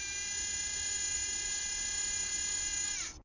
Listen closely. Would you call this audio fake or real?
fake